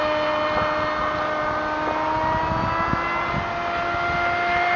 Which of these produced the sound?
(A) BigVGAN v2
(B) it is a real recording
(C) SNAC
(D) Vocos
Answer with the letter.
B